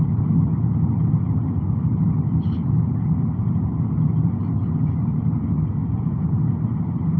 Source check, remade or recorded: recorded